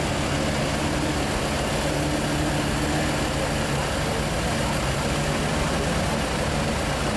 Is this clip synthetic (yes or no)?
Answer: no